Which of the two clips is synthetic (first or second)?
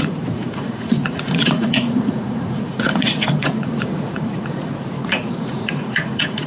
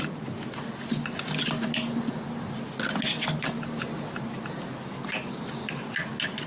first